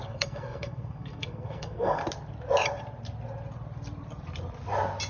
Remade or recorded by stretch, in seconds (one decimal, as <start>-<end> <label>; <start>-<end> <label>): 0.0-2.0 remade; 2.0-5.1 recorded